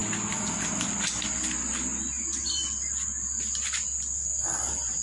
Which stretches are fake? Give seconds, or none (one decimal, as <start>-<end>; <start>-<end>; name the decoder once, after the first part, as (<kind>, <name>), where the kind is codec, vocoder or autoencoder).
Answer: none